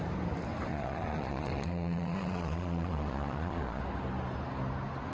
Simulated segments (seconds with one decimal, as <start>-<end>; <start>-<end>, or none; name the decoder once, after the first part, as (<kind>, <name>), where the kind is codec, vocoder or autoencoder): 0.7-3.8 (vocoder, Vocos)